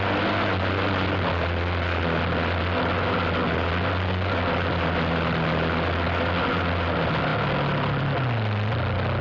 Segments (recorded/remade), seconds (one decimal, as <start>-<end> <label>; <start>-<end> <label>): 0.0-9.2 recorded